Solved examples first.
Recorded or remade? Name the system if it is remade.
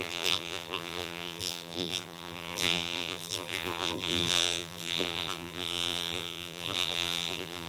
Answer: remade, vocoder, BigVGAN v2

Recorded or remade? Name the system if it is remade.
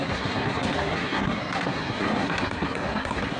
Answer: remade, codec, SNAC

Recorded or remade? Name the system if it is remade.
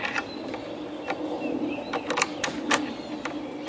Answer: recorded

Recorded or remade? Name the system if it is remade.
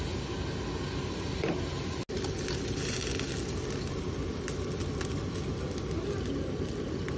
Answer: recorded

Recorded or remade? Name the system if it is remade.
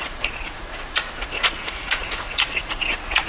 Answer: remade, vocoder, Vocos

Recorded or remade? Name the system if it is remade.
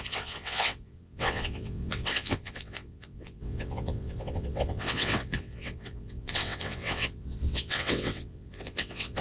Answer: remade, vocoder, WaveNeXt